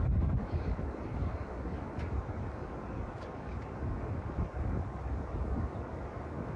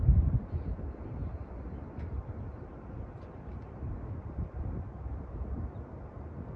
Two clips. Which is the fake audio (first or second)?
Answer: first